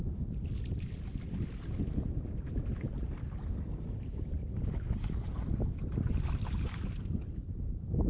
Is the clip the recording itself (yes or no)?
no